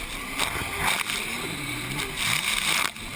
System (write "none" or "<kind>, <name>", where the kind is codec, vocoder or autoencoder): none